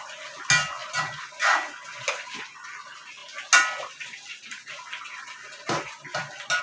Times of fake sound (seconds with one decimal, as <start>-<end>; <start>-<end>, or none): none